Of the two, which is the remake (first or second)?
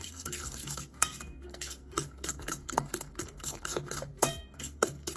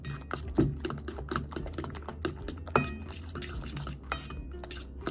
first